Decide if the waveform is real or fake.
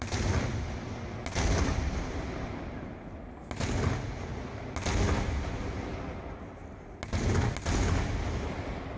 real